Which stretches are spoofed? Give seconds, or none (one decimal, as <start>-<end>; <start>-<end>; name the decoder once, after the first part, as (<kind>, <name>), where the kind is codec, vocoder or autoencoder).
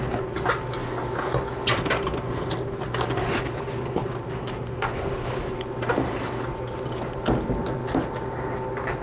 none